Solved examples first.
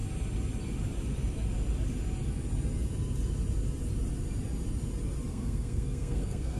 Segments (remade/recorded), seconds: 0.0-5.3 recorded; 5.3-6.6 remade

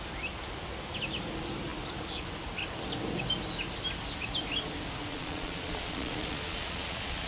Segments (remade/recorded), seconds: 0.0-5.1 recorded; 5.1-7.3 remade

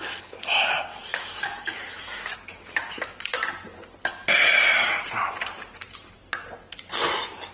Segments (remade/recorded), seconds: 0.0-0.9 recorded; 0.9-3.2 remade; 3.2-7.5 recorded

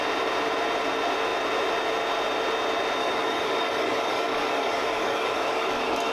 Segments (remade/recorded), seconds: 0.0-3.0 recorded; 3.0-6.1 remade

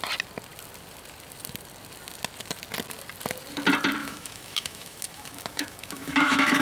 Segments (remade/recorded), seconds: 0.0-4.0 recorded; 4.0-6.6 remade

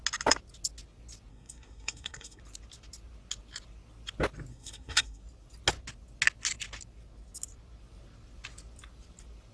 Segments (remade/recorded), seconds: 0.0-1.3 recorded; 1.3-2.4 remade; 2.4-4.5 recorded; 4.5-5.2 remade; 5.2-9.5 recorded